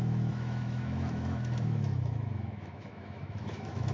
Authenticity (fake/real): fake